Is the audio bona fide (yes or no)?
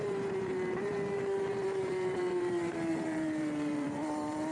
no